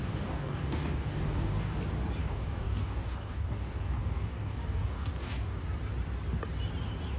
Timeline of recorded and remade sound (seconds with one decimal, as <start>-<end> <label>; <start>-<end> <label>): 0.0-1.8 remade; 1.8-2.2 recorded; 2.2-5.6 remade; 5.6-7.2 recorded